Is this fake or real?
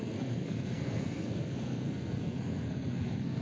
fake